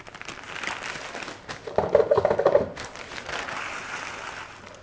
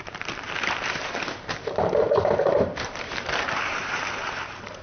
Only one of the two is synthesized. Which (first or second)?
second